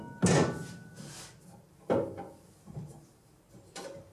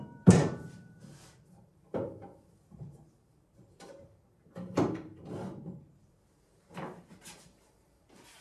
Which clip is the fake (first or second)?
second